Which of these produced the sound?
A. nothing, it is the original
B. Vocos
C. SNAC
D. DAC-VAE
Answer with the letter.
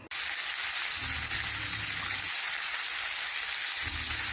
A